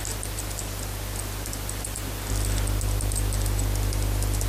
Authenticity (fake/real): real